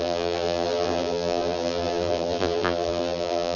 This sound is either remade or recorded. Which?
remade